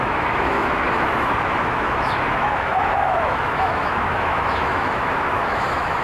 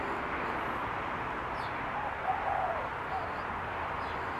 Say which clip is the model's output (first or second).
first